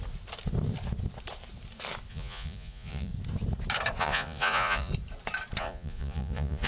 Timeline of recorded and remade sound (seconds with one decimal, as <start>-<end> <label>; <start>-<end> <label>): 0.0-2.1 recorded; 2.1-3.1 remade; 3.1-4.0 recorded; 4.0-4.9 remade; 4.9-5.6 recorded; 5.6-6.7 remade